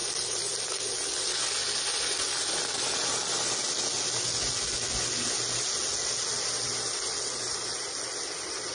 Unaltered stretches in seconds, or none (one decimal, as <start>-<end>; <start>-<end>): 0.0-8.7